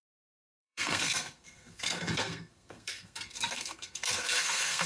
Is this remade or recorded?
remade